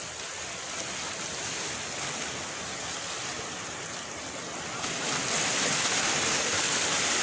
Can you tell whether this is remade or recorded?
recorded